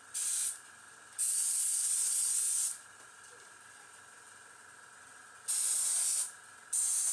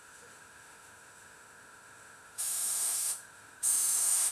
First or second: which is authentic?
first